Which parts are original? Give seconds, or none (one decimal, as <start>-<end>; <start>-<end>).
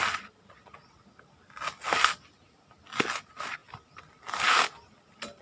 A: 0.0-3.6; 4.6-5.4